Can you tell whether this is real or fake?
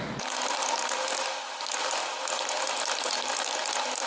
real